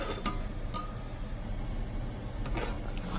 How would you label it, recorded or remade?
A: recorded